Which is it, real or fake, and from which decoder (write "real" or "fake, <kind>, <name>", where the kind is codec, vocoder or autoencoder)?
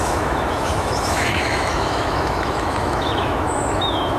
fake, autoencoder, DAC-VAE